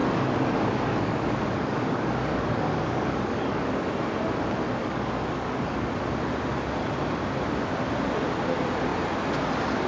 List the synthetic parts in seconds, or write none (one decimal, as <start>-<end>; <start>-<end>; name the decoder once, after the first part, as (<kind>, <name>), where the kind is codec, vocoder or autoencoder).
0.0-3.7 (codec, DAC); 4.8-5.9